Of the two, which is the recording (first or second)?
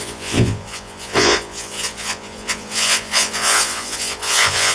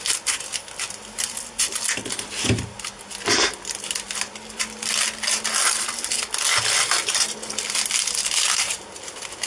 second